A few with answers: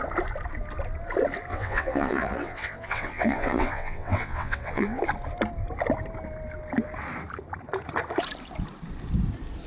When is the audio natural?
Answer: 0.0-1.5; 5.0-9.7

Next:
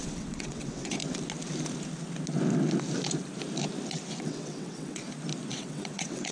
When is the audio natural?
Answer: 1.0-4.2; 5.0-5.5

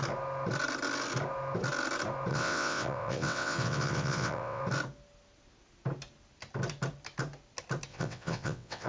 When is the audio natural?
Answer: 0.0-2.3; 4.6-7.9